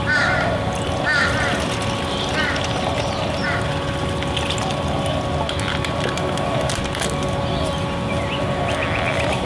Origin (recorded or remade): recorded